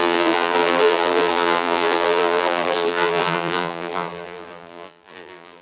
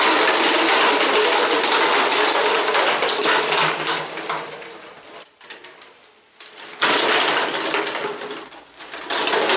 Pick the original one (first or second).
second